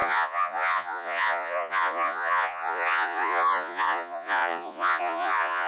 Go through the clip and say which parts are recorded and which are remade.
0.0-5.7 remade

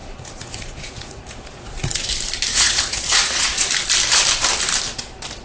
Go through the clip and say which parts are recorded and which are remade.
0.0-2.1 remade; 2.1-2.5 recorded; 2.5-3.7 remade; 3.7-5.4 recorded

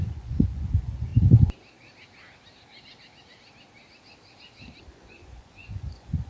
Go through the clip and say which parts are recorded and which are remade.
0.0-1.1 remade; 1.1-4.9 recorded; 4.9-6.3 remade

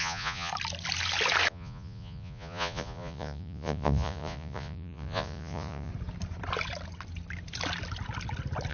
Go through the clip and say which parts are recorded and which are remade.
0.0-0.5 remade; 0.5-1.5 recorded; 1.5-5.9 remade; 5.9-8.7 recorded

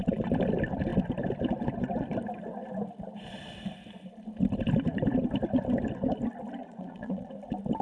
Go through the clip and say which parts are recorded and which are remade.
0.0-6.6 recorded; 6.6-7.3 remade; 7.3-7.8 recorded

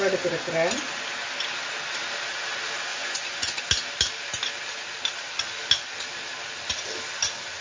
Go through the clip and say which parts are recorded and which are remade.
0.0-2.9 recorded; 2.9-3.6 remade; 3.6-7.6 recorded

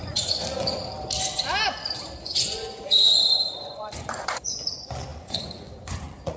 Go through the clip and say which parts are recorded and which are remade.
0.0-0.8 remade; 0.8-2.2 recorded; 2.2-6.4 remade